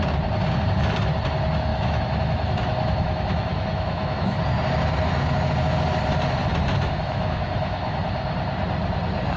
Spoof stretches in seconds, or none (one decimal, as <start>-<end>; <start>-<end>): 1.7-4.4; 6.7-8.0